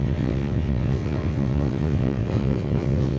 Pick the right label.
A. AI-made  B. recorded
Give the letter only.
A